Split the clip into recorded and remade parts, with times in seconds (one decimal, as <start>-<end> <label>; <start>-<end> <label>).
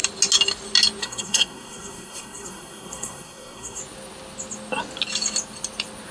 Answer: 0.0-1.0 recorded; 1.0-3.8 remade; 3.8-6.1 recorded